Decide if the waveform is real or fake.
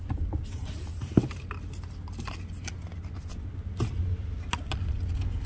real